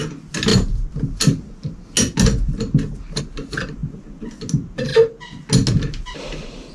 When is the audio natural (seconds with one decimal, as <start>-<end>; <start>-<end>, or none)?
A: 0.0-6.7